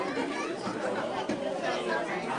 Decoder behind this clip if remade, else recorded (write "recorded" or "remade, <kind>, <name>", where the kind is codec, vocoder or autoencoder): remade, vocoder, BigVGAN v2